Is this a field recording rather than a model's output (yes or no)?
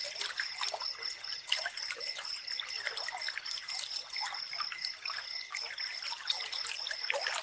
yes